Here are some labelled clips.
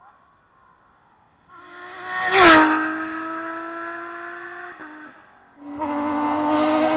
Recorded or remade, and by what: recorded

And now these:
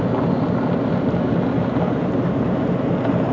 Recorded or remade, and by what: recorded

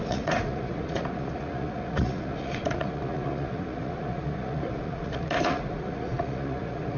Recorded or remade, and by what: remade, vocoder, Vocos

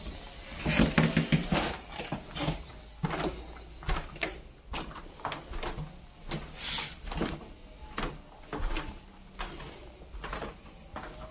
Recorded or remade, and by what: recorded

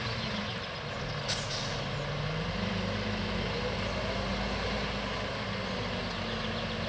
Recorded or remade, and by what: recorded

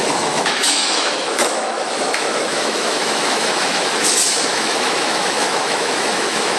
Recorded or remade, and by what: remade, autoencoder, DAC-VAE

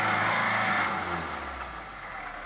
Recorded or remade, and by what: recorded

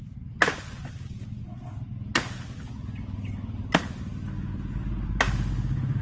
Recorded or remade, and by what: recorded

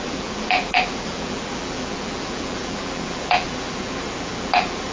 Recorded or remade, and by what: remade, vocoder, BigVGAN v2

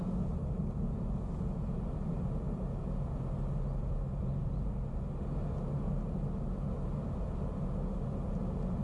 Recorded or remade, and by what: recorded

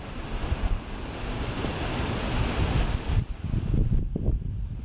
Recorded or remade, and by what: recorded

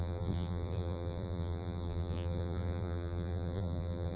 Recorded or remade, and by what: remade, vocoder, BigVGAN v2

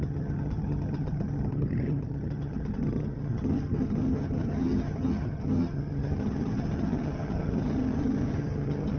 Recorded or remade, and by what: remade, vocoder, HiFi-GAN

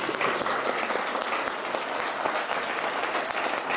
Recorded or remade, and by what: recorded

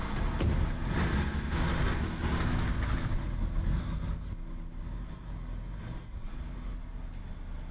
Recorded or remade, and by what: recorded